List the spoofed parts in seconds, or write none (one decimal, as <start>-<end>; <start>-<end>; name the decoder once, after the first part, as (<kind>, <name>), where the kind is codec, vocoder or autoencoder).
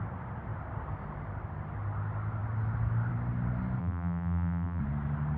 3.8-4.8 (vocoder, BigVGAN v2)